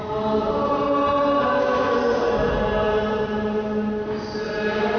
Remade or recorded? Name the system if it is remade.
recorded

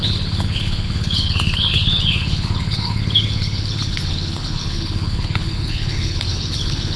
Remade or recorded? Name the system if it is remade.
remade, codec, HILCodec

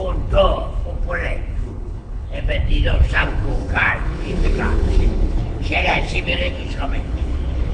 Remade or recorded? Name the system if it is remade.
remade, codec, HILCodec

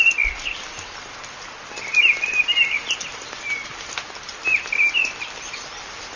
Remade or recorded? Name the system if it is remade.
recorded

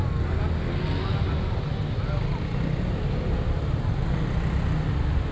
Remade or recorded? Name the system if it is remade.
recorded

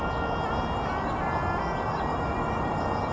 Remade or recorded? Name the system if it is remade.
recorded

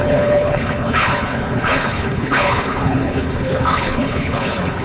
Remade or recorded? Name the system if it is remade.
remade, codec, HILCodec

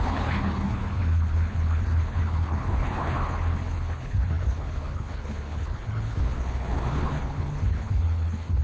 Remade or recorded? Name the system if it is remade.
remade, codec, HILCodec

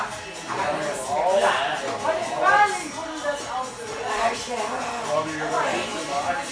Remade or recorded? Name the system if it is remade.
recorded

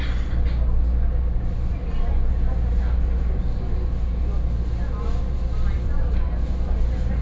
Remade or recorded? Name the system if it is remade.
recorded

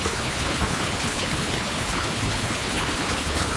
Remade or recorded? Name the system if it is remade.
remade, codec, HILCodec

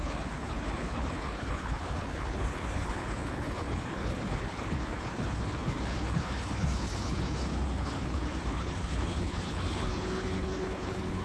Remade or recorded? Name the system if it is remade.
remade, codec, HILCodec